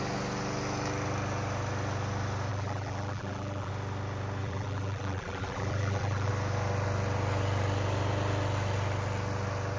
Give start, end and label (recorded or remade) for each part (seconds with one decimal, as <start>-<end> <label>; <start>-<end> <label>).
0.0-2.5 recorded; 2.5-3.7 remade; 3.7-4.4 recorded; 4.4-6.3 remade; 6.3-9.8 recorded